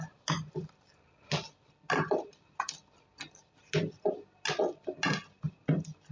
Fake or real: real